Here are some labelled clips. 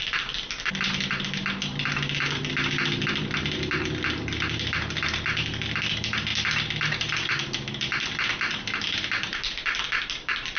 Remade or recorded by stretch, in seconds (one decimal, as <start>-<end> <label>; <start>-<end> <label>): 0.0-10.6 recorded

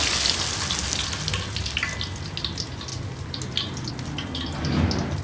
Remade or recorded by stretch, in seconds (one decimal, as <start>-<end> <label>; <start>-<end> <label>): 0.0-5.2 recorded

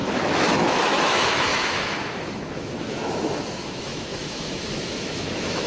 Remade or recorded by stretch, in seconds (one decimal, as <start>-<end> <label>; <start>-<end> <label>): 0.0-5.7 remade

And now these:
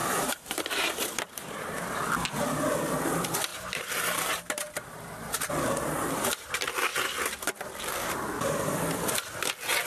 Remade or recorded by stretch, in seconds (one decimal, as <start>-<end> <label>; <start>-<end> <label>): 0.0-2.0 remade; 2.0-3.5 recorded; 3.5-5.5 remade; 5.5-9.9 recorded

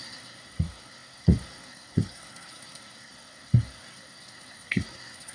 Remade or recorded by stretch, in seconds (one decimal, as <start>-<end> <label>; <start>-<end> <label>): 0.0-5.3 remade

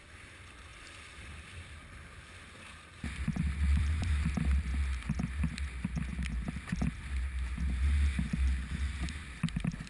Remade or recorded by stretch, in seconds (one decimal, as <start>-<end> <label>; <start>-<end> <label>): 0.0-0.7 recorded; 0.7-4.3 remade; 4.3-6.1 recorded; 6.1-7.0 remade; 7.0-9.9 recorded

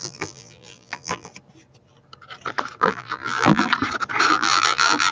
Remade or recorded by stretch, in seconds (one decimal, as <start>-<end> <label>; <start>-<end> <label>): 0.0-1.3 remade; 1.3-2.8 recorded; 2.8-3.7 remade; 3.7-4.3 recorded; 4.3-5.1 remade

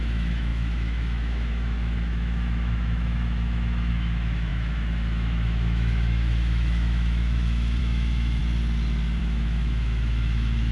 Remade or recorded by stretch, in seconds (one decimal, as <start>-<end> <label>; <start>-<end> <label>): 0.0-8.4 remade; 8.4-9.2 recorded; 9.2-10.7 remade